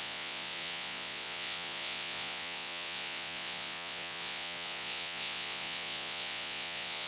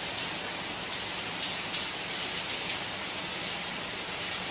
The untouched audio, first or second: second